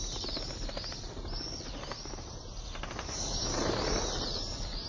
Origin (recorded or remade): recorded